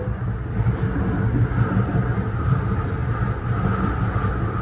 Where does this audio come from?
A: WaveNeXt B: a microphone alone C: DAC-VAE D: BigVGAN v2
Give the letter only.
B